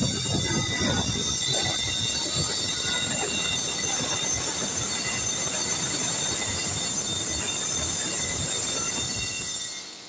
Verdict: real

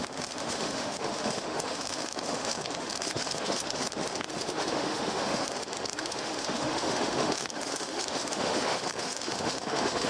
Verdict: fake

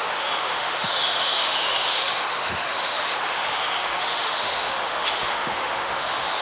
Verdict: fake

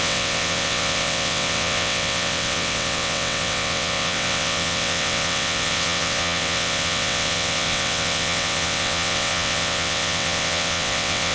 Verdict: fake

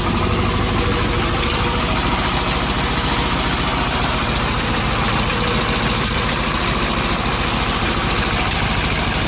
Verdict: real